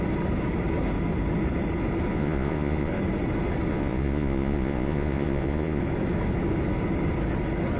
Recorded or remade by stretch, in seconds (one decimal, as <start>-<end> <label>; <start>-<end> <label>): 0.0-2.1 recorded; 2.1-2.9 remade; 2.9-3.7 recorded; 3.7-5.8 remade; 5.8-7.8 recorded